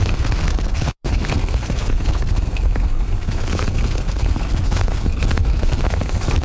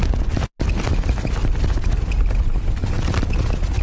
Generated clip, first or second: first